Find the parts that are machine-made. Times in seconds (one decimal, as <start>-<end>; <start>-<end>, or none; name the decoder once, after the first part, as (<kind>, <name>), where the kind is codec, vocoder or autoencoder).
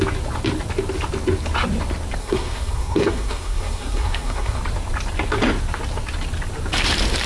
2.2-4.6 (codec, SNAC)